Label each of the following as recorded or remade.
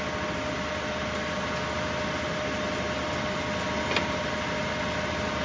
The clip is recorded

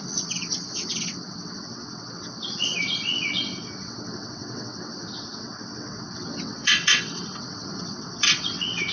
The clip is remade